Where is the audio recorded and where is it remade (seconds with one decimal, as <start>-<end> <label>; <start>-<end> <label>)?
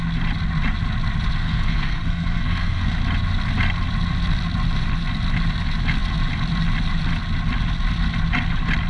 0.0-1.4 recorded; 1.4-3.0 remade; 3.0-8.9 recorded